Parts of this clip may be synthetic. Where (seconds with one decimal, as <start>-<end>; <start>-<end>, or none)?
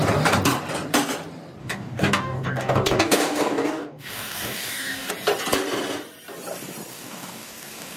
1.6-5.1; 6.9-8.0